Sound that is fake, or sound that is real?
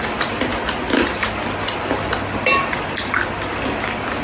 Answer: real